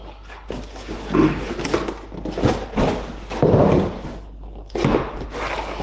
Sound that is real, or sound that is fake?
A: real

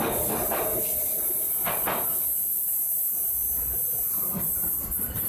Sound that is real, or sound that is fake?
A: real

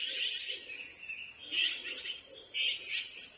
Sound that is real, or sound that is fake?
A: real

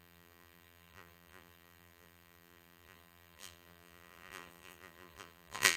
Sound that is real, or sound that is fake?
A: fake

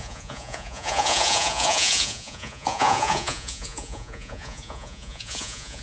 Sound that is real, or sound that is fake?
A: fake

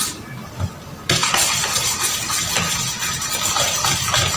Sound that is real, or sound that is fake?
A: real